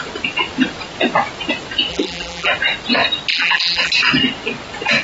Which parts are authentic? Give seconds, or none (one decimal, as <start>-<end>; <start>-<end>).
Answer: 0.0-1.9; 2.5-3.3; 3.9-5.0